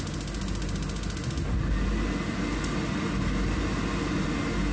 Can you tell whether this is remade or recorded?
recorded